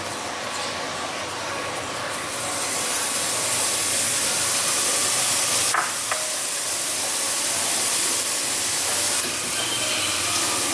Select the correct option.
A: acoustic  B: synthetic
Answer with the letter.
A